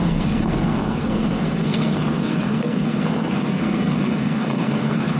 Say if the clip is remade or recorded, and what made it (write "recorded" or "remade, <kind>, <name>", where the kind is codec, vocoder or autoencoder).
remade, codec, SNAC